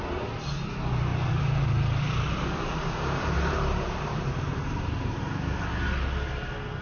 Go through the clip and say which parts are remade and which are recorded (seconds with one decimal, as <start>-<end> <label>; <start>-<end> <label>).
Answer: 0.0-1.1 recorded; 1.1-5.2 remade; 5.2-6.8 recorded